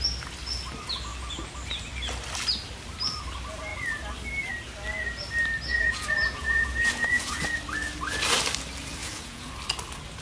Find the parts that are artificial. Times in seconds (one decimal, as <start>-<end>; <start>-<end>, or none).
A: 5.7-7.4; 9.0-9.5